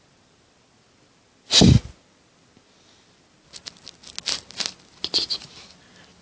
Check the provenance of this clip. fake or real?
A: real